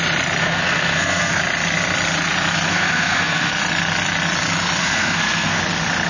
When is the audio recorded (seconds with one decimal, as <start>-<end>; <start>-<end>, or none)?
0.0-0.4; 1.4-2.7; 3.5-4.8; 5.6-6.1